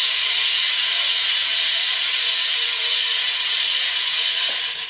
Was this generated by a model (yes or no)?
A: yes